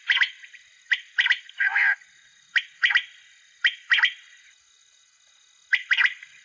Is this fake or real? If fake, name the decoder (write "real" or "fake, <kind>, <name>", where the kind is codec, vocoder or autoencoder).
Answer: real